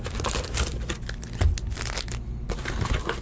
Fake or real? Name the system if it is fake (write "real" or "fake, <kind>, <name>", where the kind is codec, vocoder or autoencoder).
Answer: real